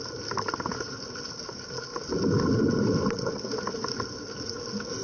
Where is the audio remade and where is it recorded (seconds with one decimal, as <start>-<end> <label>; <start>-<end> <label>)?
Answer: 0.0-5.0 recorded